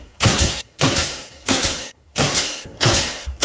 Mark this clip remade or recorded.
remade